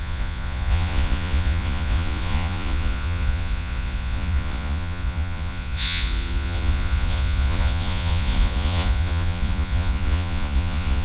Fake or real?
fake